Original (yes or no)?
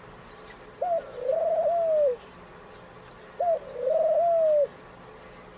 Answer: yes